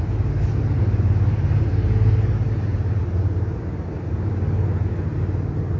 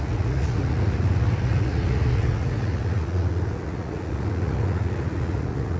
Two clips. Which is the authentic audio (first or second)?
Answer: first